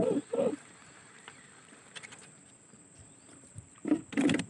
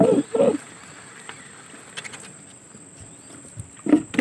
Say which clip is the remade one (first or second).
first